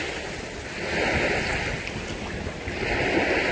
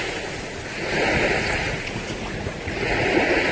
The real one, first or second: first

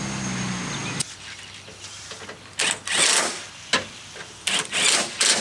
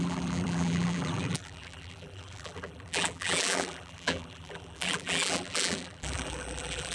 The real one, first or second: first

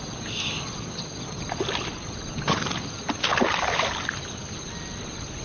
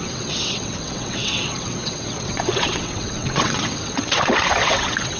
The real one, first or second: first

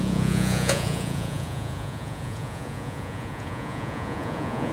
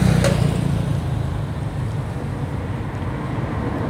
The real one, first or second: second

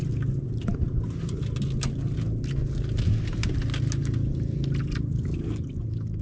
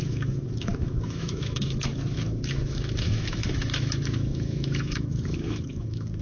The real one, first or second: first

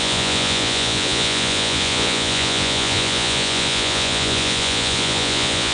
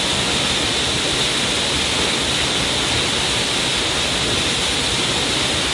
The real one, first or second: second